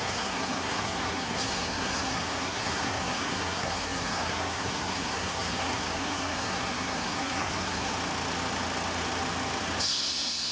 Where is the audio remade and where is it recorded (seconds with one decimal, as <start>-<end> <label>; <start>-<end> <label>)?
0.0-7.9 remade; 7.9-9.8 recorded; 9.8-10.5 remade